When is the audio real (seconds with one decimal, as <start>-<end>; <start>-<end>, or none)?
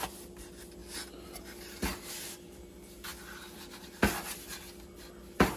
0.0-5.6